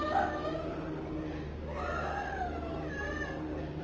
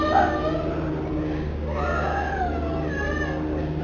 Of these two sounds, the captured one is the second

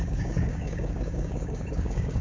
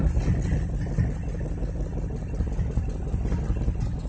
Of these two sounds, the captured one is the second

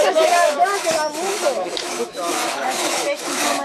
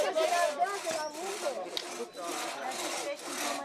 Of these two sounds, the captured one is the second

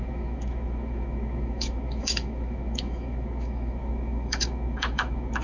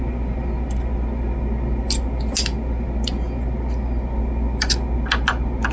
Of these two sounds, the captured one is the second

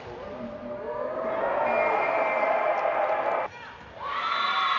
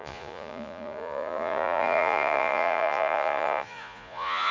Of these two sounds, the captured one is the first